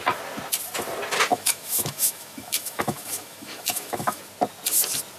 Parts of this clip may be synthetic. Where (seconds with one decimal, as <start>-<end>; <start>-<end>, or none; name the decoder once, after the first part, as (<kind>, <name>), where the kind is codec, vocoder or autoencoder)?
1.3-4.2 (autoencoder, DAC-VAE)

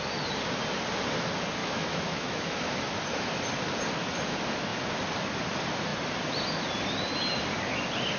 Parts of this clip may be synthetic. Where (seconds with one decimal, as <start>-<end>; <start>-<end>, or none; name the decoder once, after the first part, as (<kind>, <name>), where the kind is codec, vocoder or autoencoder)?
1.6-2.9 (autoencoder, DAC-VAE)

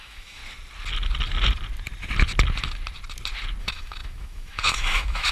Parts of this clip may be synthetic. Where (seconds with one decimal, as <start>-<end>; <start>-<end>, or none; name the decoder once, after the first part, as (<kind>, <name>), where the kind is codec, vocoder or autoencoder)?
0.0-0.4 (autoencoder, DAC-VAE); 3.6-5.3

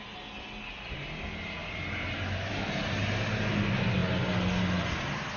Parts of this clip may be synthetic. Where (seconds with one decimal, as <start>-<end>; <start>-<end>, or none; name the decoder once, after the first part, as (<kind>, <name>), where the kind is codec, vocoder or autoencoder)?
none